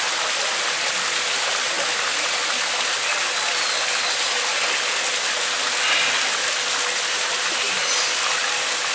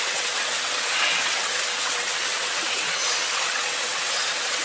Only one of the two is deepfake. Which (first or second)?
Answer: second